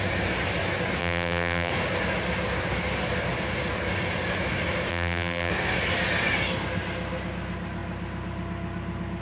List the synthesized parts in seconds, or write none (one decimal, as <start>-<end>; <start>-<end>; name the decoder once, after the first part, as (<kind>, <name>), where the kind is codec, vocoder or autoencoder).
1.0-1.7 (vocoder, BigVGAN v2); 4.9-5.5